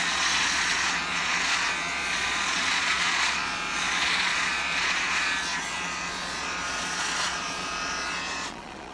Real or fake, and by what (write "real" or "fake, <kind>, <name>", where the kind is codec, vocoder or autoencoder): fake, vocoder, Vocos